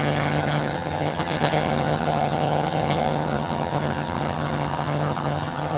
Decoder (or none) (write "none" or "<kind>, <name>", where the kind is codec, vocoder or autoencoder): vocoder, HiFi-GAN